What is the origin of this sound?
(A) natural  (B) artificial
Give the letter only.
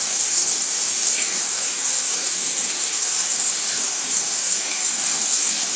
B